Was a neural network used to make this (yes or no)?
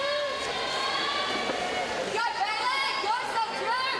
no